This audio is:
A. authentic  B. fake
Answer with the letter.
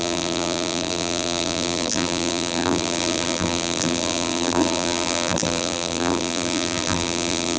B